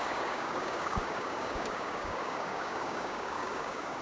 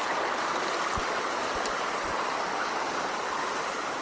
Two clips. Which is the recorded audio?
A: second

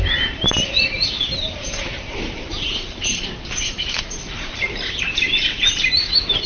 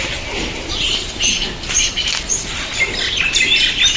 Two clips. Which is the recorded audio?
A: second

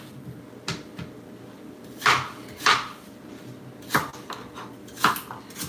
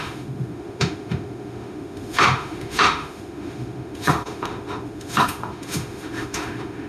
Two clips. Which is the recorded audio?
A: first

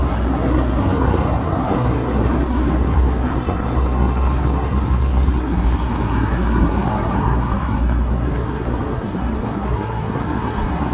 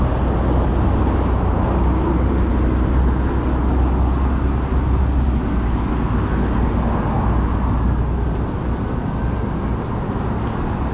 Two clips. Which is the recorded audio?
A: second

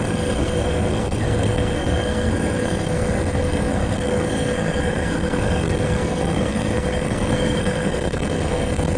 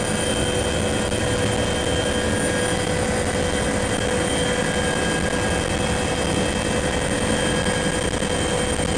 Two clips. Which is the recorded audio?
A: second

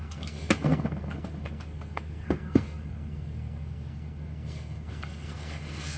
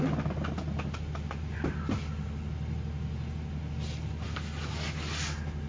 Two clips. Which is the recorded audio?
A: second